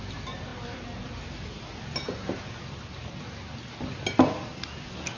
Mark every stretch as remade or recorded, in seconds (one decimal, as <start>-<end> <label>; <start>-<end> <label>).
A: 0.0-5.2 recorded